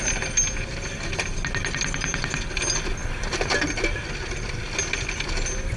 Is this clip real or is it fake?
real